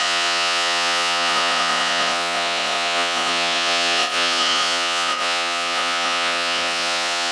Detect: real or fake fake